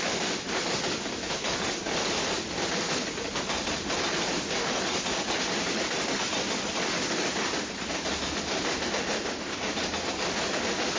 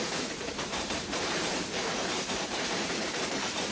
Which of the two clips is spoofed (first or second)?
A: second